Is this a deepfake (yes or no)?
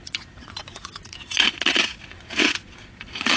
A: yes